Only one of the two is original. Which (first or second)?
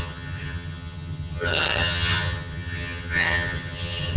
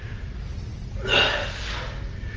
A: second